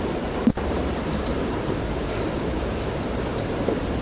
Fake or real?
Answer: fake